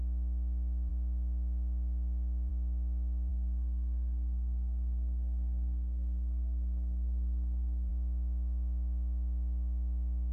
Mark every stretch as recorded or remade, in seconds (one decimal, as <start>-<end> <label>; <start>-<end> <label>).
0.0-3.3 recorded; 3.3-7.9 remade; 7.9-10.3 recorded